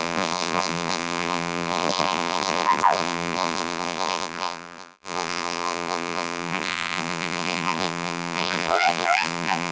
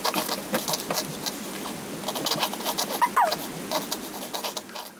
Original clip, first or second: second